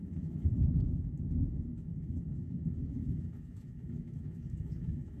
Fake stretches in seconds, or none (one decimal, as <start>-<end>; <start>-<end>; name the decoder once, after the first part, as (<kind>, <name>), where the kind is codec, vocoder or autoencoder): 0.0-5.2 (autoencoder, DAC-VAE)

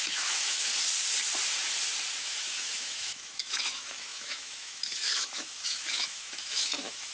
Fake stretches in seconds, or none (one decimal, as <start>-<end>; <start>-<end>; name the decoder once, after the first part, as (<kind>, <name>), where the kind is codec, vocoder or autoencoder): 0.0-0.7 (autoencoder, DAC-VAE); 2.2-7.1